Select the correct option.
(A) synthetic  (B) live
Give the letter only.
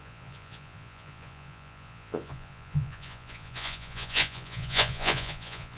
A